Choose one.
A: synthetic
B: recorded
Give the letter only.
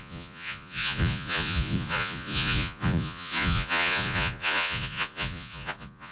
A